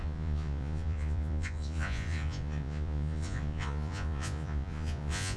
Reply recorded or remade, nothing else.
remade